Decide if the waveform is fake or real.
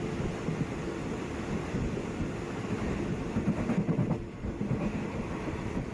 real